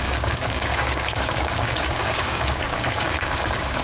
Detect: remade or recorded remade